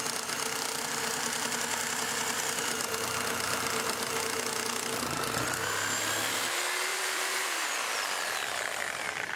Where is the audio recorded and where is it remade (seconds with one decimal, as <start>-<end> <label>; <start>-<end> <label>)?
0.0-6.9 recorded; 6.9-9.3 remade